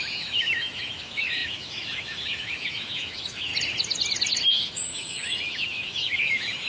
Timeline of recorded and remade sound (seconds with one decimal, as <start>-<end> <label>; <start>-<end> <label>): 0.0-3.5 remade; 3.5-4.5 recorded; 4.5-6.7 remade